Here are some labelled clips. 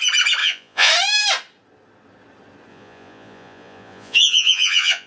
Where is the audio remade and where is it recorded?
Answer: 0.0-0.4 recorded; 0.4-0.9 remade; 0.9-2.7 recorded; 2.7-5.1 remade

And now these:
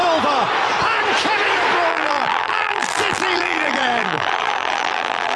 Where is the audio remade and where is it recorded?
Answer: 0.0-1.9 recorded; 1.9-5.4 remade

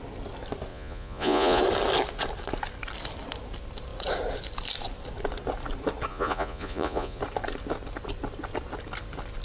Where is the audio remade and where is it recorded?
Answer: 0.0-0.7 recorded; 0.7-1.6 remade; 1.6-6.1 recorded; 6.1-7.2 remade; 7.2-9.4 recorded

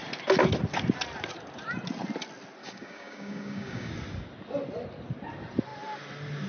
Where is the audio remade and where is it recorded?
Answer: 0.0-2.6 recorded; 2.6-3.9 remade; 3.9-6.5 recorded

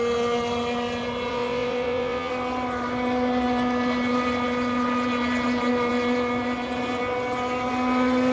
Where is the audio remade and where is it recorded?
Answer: 0.0-1.3 recorded; 1.3-2.3 remade; 2.3-8.3 recorded

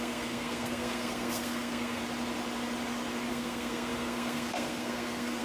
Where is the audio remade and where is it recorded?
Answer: 0.0-2.0 remade; 2.0-3.3 recorded; 3.3-5.4 remade

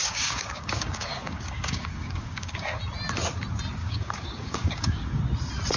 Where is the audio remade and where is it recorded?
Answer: 0.0-2.8 remade; 2.8-3.8 recorded; 3.8-5.2 remade; 5.2-5.8 recorded